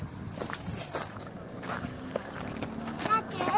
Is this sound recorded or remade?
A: recorded